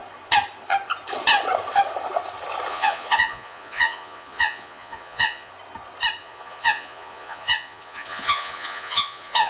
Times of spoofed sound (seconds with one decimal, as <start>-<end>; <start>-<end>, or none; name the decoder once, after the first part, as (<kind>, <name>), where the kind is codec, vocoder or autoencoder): 2.7-5.5 (vocoder, Vocos); 6.2-9.5